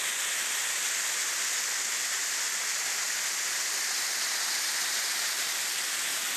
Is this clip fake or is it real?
real